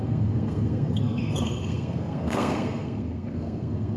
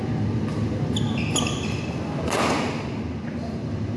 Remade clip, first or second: first